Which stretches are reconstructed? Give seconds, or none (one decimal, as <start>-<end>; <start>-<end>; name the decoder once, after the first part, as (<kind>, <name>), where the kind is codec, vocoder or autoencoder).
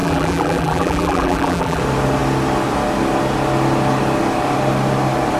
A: 0.0-1.8 (vocoder, BigVGAN v2)